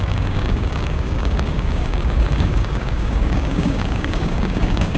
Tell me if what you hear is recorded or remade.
remade